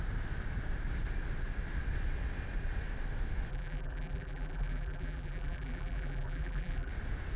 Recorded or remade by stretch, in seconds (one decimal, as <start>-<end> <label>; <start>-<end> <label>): 0.0-3.5 recorded; 3.5-6.9 remade; 6.9-7.4 recorded

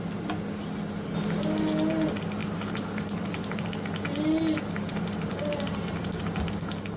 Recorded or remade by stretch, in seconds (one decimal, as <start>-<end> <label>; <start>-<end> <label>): 0.0-2.4 recorded; 2.4-3.8 remade; 3.8-4.9 recorded; 4.9-6.2 remade; 6.2-7.0 recorded

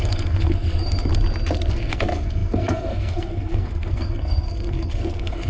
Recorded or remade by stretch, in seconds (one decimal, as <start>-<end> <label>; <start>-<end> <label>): 0.0-1.1 remade; 1.1-1.7 recorded; 1.7-5.5 remade

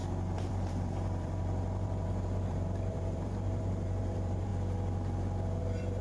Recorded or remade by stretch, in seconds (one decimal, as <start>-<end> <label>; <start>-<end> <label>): 0.0-0.5 recorded; 0.5-4.5 remade; 4.5-5.6 recorded; 5.6-6.0 remade

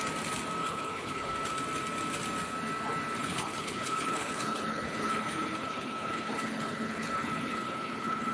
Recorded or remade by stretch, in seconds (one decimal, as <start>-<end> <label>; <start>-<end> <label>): 0.0-0.6 recorded; 0.6-1.3 remade; 1.3-3.2 recorded; 3.2-8.3 remade

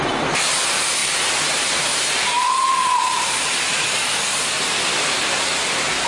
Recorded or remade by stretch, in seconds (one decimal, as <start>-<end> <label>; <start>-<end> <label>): 0.0-1.0 recorded; 1.0-4.7 remade; 4.7-6.1 recorded

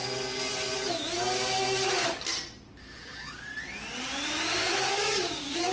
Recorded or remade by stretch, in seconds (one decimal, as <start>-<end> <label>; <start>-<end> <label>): 0.0-2.8 recorded; 2.8-3.5 remade; 3.5-4.9 recorded; 4.9-5.7 remade

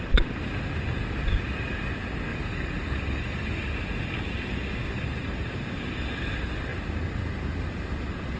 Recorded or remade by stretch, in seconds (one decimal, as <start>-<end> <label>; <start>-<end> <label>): 0.0-2.3 recorded; 2.3-3.6 remade; 3.6-8.4 recorded